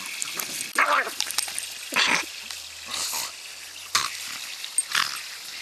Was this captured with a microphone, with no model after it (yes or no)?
yes